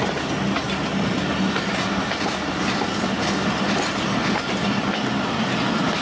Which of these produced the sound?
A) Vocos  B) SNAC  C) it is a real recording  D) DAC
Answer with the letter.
C